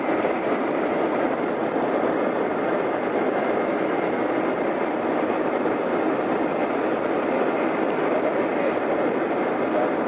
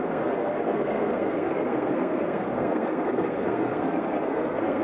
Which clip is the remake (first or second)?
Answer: second